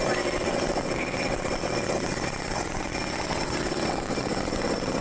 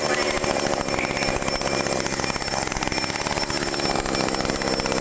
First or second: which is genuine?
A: second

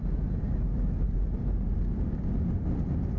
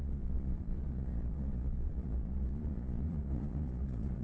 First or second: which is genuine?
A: first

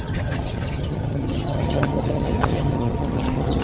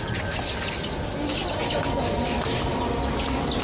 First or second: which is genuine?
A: second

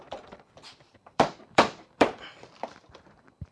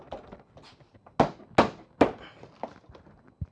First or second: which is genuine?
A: second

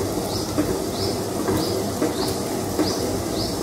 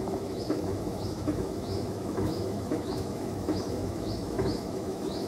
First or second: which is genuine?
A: first